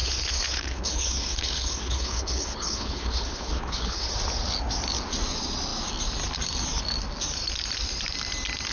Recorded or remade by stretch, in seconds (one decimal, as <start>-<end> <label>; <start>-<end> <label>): 0.0-4.1 remade; 4.1-8.7 recorded